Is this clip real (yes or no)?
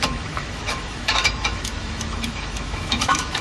no